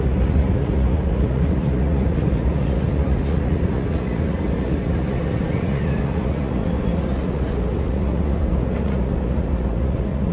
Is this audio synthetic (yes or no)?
yes